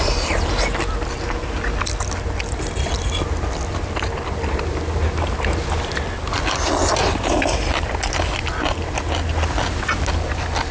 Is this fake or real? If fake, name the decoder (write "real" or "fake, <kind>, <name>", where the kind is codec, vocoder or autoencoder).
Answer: real